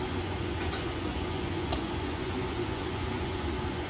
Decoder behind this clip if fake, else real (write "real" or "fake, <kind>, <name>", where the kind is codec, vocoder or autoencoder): fake, vocoder, Vocos